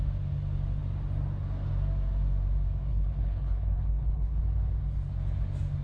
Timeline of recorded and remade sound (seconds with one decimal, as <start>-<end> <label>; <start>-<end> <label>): 0.0-2.9 recorded; 2.9-4.4 remade; 4.4-5.8 recorded